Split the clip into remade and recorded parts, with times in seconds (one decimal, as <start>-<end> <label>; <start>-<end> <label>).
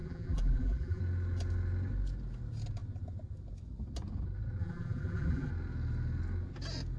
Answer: 0.0-1.0 remade; 1.0-4.6 recorded; 4.6-5.5 remade; 5.5-7.0 recorded